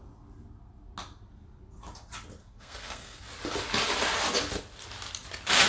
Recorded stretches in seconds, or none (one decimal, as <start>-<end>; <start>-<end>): 0.0-2.4; 3.2-5.7